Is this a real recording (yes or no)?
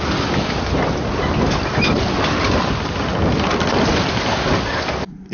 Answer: yes